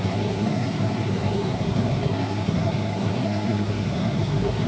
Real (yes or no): no